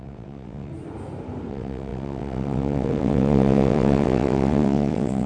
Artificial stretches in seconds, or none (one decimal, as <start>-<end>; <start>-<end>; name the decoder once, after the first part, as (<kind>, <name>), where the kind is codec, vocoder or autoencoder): 0.0-0.7 (vocoder, WaveNeXt); 1.5-5.3